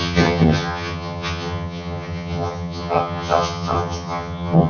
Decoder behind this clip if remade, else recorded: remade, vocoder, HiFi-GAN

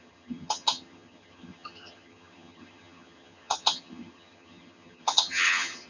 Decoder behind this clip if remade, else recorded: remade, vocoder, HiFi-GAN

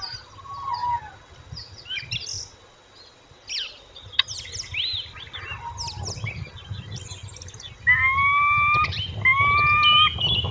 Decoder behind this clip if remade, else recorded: recorded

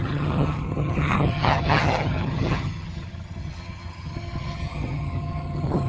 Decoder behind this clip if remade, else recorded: remade, vocoder, HiFi-GAN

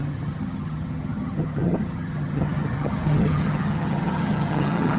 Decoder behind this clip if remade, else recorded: remade, vocoder, HiFi-GAN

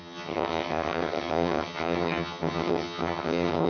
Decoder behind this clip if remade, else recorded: remade, vocoder, HiFi-GAN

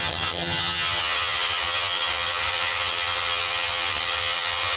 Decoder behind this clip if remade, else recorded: remade, vocoder, HiFi-GAN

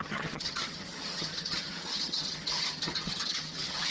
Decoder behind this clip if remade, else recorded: remade, vocoder, HiFi-GAN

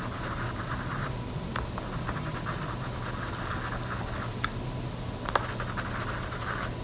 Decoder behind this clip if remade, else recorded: recorded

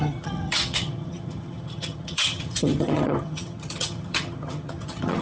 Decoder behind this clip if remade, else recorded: remade, vocoder, HiFi-GAN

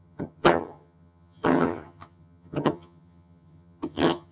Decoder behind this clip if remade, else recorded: remade, vocoder, HiFi-GAN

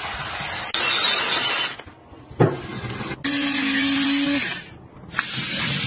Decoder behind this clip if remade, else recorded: recorded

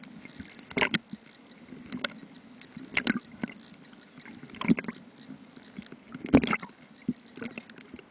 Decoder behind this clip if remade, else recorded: recorded